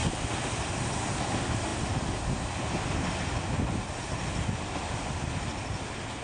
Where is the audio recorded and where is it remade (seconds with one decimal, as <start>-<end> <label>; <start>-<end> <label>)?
0.0-6.2 recorded